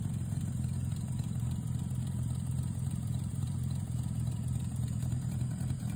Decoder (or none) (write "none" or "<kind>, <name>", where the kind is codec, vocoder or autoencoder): vocoder, BigVGAN v2